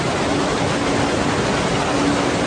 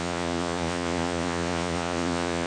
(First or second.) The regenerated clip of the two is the second